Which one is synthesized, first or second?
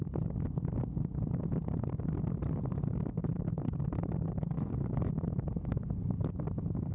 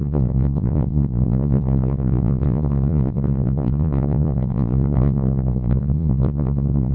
second